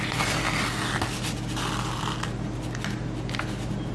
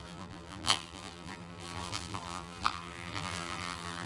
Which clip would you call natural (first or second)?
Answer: first